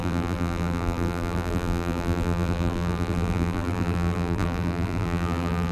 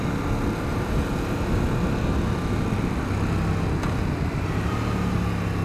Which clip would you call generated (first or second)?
first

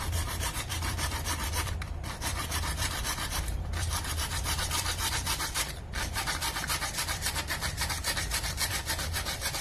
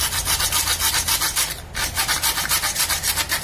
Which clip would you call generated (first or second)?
first